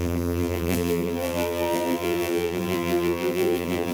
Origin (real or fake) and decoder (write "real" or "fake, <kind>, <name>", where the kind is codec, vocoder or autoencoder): fake, vocoder, BigVGAN v2